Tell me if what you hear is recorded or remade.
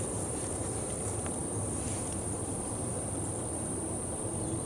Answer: remade